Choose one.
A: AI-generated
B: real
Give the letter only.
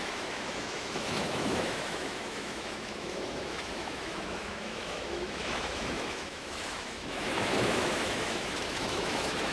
A